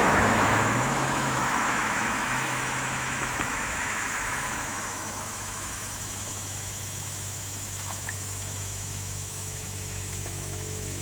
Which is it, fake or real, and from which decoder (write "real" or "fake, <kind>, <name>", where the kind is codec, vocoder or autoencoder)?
fake, autoencoder, DAC-VAE